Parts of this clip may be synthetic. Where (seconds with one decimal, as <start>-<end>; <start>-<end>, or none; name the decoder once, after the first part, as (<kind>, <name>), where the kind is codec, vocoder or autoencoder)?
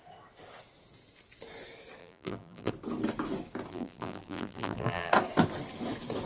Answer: 2.0-2.7 (vocoder, BigVGAN v2); 3.7-5.1